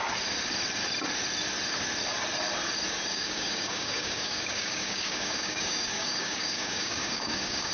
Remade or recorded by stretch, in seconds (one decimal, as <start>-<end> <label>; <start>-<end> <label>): 0.0-3.1 recorded; 3.1-7.7 remade